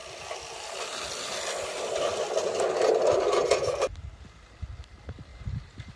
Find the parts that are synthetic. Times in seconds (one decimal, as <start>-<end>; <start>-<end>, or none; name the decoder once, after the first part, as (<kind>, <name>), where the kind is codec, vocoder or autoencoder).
5.3-6.0 (vocoder, BigVGAN v2)